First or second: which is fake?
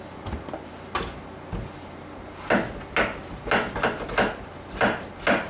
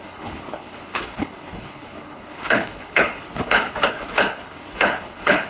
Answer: second